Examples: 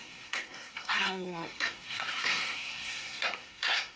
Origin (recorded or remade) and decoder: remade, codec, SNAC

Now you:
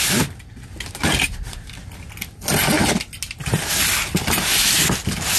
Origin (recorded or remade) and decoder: recorded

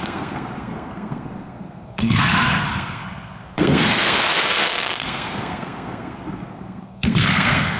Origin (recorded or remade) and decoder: remade, codec, SNAC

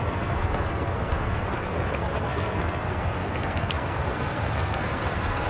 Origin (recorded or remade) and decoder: remade, codec, SNAC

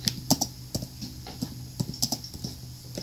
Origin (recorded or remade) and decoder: recorded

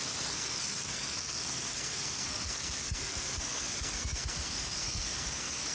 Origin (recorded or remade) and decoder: remade, codec, SNAC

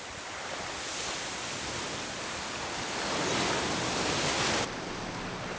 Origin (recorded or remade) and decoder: recorded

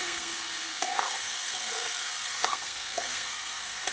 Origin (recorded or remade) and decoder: remade, codec, SNAC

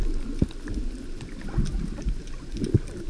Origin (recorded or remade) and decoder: recorded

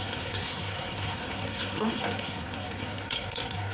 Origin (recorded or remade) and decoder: remade, codec, SNAC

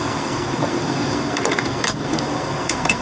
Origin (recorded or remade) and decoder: remade, codec, SNAC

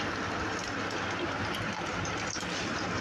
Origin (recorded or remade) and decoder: recorded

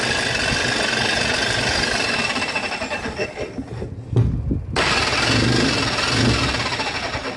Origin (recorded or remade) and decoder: recorded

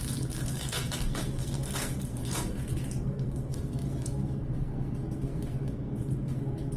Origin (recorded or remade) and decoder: remade, codec, SNAC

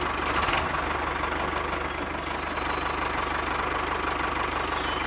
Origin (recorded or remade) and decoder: recorded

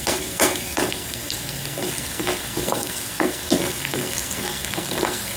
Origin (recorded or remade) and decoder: remade, codec, SNAC